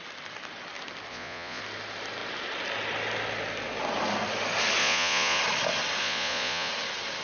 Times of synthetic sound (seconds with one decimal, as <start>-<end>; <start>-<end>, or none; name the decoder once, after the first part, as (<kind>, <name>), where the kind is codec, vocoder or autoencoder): 1.1-1.6 (vocoder, Vocos); 4.8-5.4; 6.0-6.7